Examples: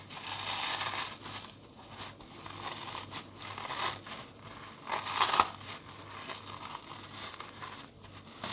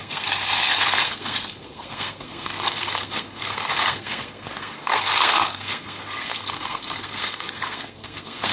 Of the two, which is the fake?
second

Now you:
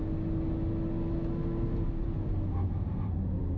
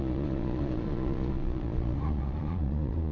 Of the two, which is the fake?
second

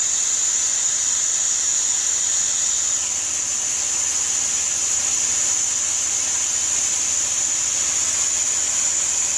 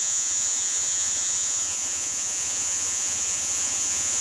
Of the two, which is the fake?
second